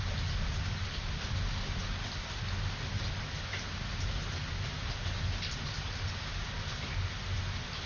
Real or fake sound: real